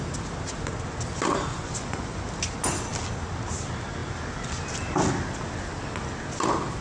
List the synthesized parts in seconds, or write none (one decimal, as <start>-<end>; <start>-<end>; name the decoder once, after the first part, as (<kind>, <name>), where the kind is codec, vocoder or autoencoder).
1.5-2.3 (vocoder, Vocos)